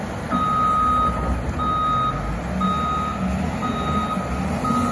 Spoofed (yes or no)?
no